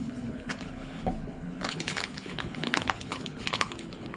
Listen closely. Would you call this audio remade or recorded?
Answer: remade